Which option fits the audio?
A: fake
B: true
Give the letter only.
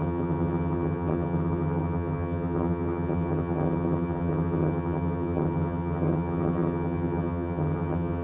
A